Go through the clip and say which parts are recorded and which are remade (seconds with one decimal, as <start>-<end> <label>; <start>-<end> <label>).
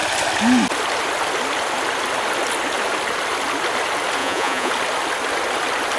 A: 0.0-4.2 recorded; 4.2-4.7 remade; 4.7-6.0 recorded